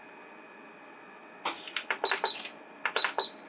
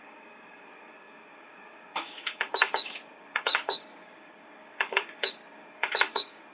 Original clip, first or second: first